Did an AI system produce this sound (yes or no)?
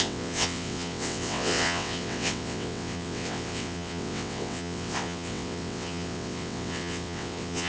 yes